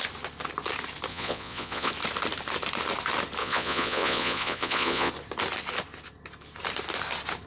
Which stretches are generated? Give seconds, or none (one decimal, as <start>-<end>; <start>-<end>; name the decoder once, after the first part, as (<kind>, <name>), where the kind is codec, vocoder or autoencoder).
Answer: 1.1-1.9 (vocoder, Vocos); 3.4-5.1